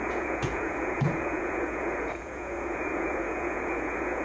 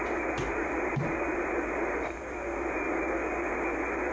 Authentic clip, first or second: second